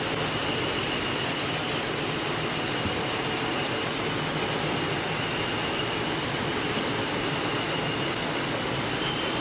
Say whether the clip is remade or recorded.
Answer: recorded